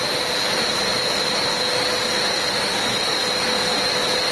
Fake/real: real